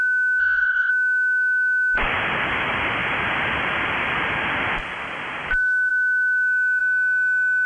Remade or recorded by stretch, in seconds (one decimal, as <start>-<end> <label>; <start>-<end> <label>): 0.0-0.4 recorded; 0.4-0.9 remade; 0.9-7.7 recorded